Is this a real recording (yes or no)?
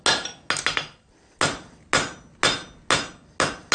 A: yes